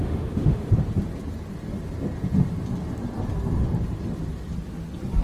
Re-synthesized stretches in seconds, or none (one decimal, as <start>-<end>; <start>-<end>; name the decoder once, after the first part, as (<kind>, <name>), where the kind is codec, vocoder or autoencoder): 0.0-0.7 (autoencoder, DAC-VAE)